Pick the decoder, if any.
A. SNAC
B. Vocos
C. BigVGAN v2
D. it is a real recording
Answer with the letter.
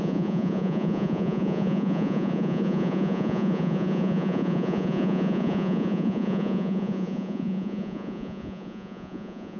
B